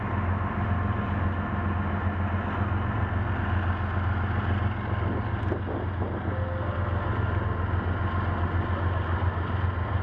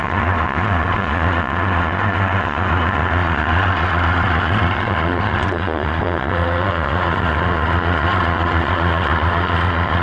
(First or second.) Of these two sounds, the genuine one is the first